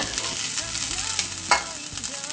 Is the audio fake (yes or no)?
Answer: no